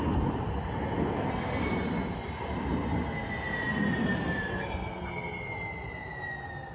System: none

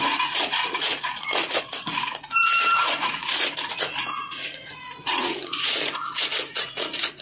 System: vocoder, Vocos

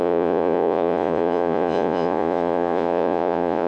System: vocoder, Vocos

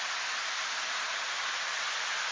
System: none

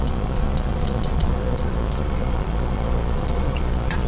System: vocoder, Vocos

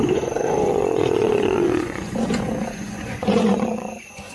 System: vocoder, Vocos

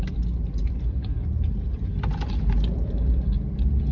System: none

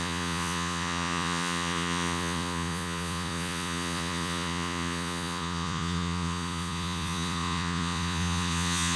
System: vocoder, Vocos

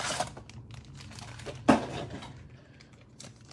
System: none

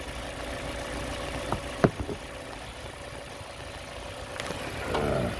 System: none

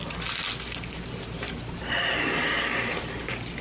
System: none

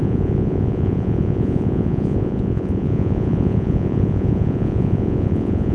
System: vocoder, Vocos